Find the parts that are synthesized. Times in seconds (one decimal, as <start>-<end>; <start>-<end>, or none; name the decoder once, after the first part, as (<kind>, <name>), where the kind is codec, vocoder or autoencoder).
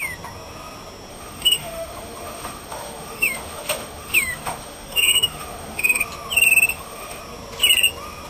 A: 1.1-6.0 (autoencoder, DAC-VAE); 6.7-7.2